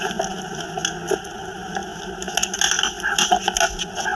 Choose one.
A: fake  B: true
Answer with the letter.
B